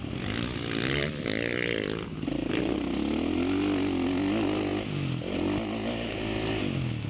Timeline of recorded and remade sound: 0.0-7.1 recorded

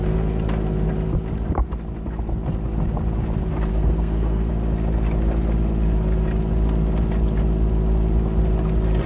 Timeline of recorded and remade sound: 0.0-3.7 recorded; 3.7-4.5 remade; 4.5-9.1 recorded

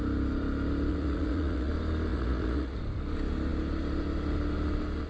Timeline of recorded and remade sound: 0.0-0.9 recorded; 0.9-1.7 remade; 1.7-2.1 recorded; 2.1-2.8 remade; 2.8-5.1 recorded

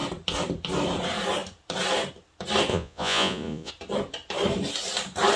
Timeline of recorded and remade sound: 0.0-2.7 recorded; 2.7-3.7 remade; 3.7-5.4 recorded

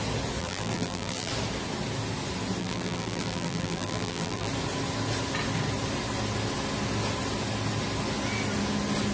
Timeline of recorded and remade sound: 0.0-0.4 recorded; 0.4-1.3 remade; 1.3-2.6 recorded; 2.6-4.5 remade; 4.5-9.1 recorded

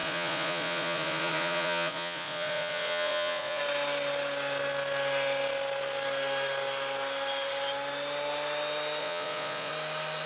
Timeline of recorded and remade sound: 0.0-3.6 remade; 3.6-9.0 recorded; 9.0-9.7 remade; 9.7-10.3 recorded